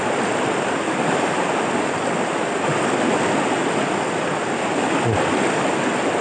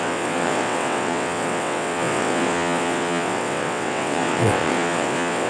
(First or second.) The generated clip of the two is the second